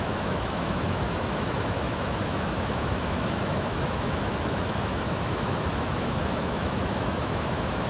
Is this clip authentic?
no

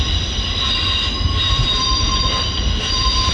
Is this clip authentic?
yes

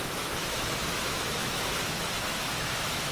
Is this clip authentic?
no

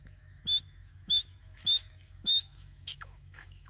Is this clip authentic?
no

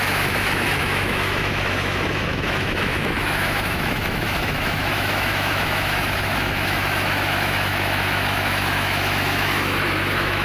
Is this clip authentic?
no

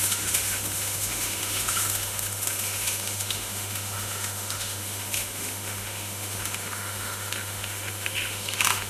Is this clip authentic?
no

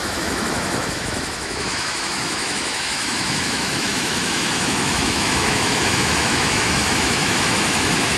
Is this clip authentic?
no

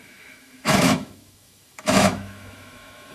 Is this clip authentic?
no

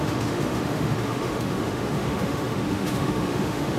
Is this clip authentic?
no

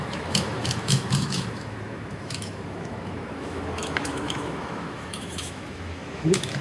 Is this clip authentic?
no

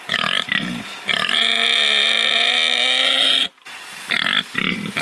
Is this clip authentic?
yes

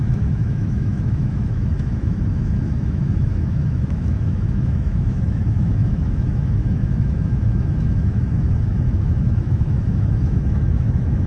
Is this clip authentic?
no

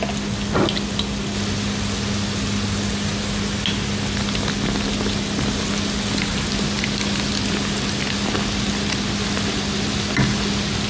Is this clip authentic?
yes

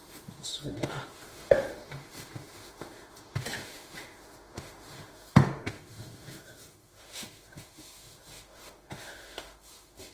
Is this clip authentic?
no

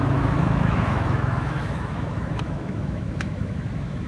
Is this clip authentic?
no